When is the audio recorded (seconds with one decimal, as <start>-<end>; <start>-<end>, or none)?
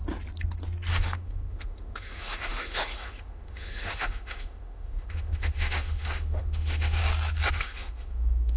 0.0-0.9; 7.0-7.5